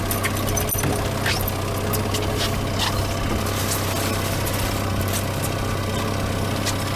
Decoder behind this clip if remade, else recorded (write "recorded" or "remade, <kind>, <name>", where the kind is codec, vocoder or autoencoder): recorded